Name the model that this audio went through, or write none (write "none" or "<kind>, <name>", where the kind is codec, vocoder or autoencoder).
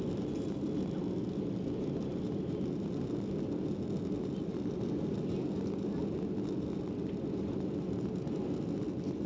none